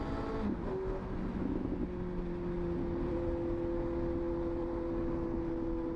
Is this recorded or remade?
recorded